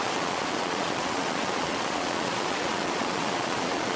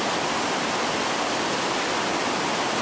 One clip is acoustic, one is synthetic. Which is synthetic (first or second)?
first